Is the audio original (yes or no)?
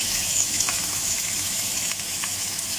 no